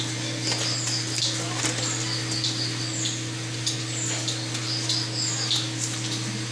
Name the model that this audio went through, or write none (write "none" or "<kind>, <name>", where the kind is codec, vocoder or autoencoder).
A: none